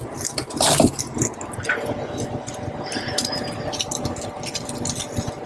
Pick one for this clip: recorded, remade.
recorded